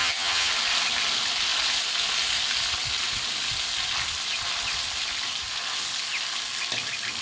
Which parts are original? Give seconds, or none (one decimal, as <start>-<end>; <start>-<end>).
0.5-7.2